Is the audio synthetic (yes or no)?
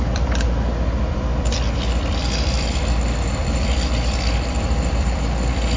yes